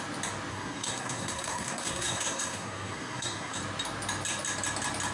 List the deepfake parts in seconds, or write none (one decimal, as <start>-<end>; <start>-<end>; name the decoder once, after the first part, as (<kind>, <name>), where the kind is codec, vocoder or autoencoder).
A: 0.5-3.6 (codec, SNAC)